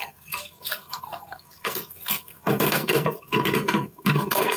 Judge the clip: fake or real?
fake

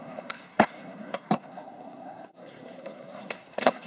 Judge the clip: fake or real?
fake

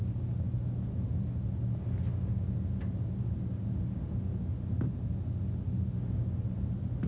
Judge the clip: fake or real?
real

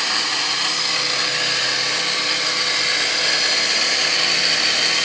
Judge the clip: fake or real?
real